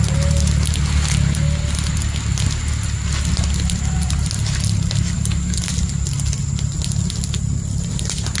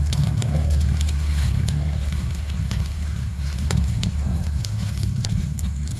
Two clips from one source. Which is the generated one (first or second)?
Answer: second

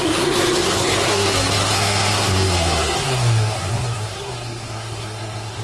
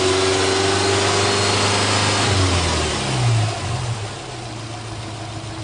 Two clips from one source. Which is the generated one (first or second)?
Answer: first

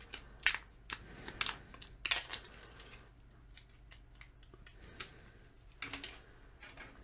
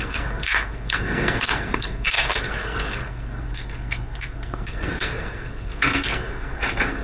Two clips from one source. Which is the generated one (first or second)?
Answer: second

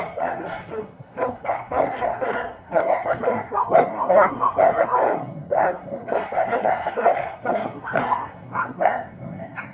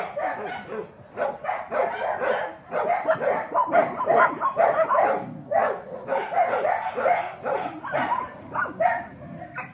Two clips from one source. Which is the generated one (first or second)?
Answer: first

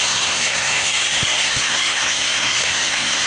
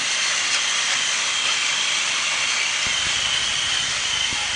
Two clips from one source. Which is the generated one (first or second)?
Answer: first